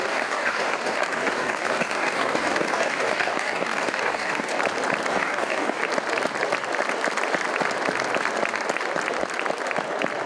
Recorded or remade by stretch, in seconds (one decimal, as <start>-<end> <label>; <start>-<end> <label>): 0.0-4.6 remade; 4.6-5.1 recorded; 5.1-5.8 remade; 5.8-10.3 recorded